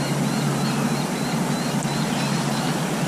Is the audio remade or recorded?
recorded